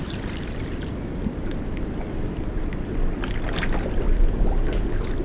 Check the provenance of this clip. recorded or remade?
recorded